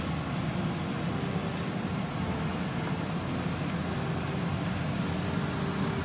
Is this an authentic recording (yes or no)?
yes